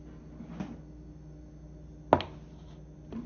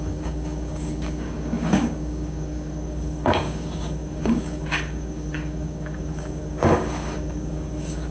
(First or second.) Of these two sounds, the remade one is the second